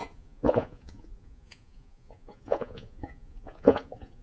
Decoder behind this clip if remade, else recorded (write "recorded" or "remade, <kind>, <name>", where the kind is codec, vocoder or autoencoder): remade, vocoder, Vocos